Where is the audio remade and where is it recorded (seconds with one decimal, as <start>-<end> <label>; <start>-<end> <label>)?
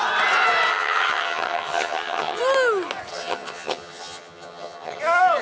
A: 0.0-0.7 recorded; 0.7-2.4 remade; 2.4-3.1 recorded; 3.1-5.0 remade; 5.0-5.4 recorded